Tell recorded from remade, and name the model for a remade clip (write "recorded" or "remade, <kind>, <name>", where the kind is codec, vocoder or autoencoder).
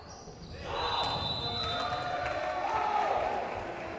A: recorded